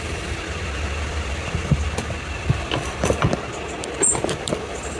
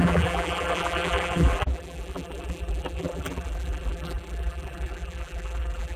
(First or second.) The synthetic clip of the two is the second